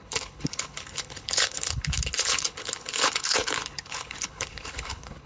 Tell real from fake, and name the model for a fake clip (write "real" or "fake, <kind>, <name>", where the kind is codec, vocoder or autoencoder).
fake, codec, HILCodec